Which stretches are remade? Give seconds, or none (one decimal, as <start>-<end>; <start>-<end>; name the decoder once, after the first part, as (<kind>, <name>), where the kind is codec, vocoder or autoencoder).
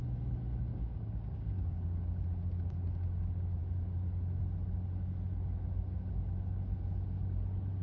0.7-2.2 (codec, DAC)